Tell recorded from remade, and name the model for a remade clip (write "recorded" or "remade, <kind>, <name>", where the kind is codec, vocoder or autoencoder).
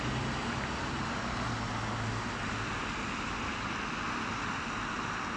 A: recorded